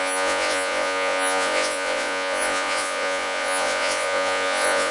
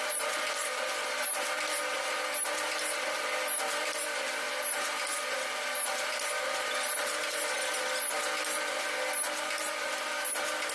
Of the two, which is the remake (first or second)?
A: first